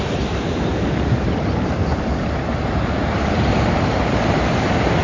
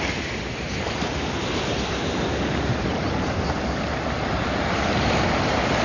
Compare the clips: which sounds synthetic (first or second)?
first